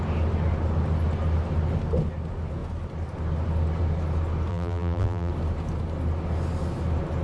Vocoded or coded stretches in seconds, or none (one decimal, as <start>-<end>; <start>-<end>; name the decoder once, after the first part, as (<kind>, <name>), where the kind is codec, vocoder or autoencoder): 4.5-5.3 (vocoder, BigVGAN v2)